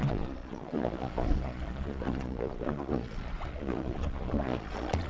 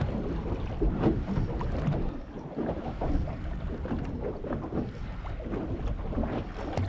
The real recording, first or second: second